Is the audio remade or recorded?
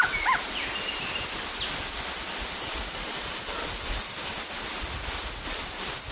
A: recorded